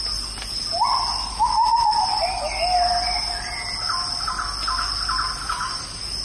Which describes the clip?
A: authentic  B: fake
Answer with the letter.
A